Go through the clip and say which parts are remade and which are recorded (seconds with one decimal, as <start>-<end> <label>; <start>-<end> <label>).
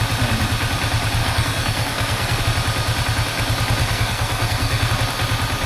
0.0-1.2 recorded; 1.2-2.4 remade; 2.4-3.8 recorded; 3.8-4.9 remade; 4.9-5.7 recorded